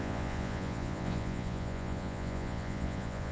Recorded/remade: remade